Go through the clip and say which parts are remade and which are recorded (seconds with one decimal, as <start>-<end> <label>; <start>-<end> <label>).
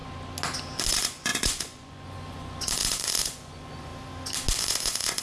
0.0-0.9 recorded; 0.9-3.9 remade; 3.9-4.6 recorded; 4.6-5.2 remade